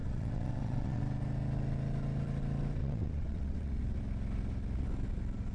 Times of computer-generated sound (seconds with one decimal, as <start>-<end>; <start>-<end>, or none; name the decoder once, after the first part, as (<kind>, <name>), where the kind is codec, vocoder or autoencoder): 0.0-1.0 (vocoder, WaveNeXt); 2.8-3.8